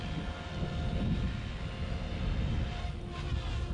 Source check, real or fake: real